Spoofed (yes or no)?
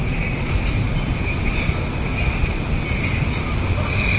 no